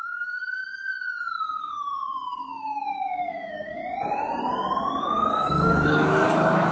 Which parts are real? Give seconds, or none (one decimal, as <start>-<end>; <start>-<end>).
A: 0.6-1.3; 3.8-5.0